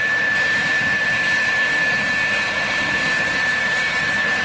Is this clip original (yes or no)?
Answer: no